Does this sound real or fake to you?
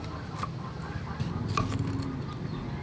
real